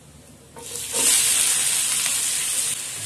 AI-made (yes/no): no